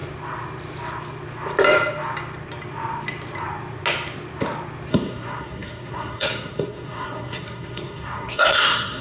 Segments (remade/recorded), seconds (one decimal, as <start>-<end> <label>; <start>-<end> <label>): 0.0-4.9 recorded; 4.9-9.0 remade